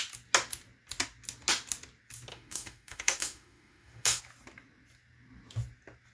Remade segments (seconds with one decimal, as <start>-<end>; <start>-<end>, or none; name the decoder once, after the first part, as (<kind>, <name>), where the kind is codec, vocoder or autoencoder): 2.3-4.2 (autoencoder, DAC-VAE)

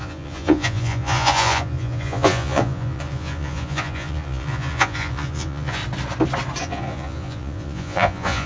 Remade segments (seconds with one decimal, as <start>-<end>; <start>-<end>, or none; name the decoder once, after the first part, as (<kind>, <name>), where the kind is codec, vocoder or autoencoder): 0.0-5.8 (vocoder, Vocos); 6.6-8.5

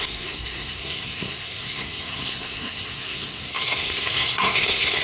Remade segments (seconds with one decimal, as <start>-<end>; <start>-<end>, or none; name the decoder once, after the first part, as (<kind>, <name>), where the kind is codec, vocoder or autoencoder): 0.0-5.0 (codec, SNAC)

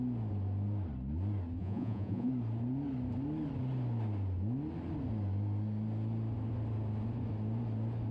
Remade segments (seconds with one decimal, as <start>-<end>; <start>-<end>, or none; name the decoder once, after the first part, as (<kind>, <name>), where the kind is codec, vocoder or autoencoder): 1.6-2.3 (vocoder, Vocos)

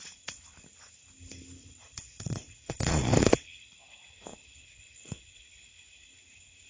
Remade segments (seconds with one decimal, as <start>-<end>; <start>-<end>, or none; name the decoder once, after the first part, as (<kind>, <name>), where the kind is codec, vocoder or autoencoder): 1.6-3.8 (vocoder, Vocos); 4.3-5.4

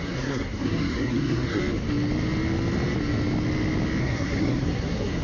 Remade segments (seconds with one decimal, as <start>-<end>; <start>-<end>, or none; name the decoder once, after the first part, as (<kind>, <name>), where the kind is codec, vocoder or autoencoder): 0.0-1.6 (codec, SNAC); 4.0-5.2